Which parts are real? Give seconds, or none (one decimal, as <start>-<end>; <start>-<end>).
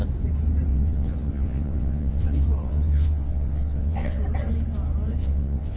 0.0-0.7; 4.2-5.2